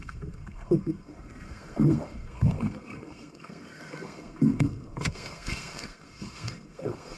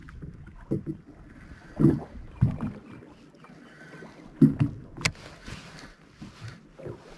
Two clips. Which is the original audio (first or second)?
second